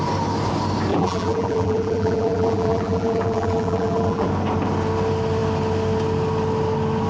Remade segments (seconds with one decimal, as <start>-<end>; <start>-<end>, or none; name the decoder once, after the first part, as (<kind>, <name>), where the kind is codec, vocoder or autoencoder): 0.9-4.3 (vocoder, BigVGAN v2)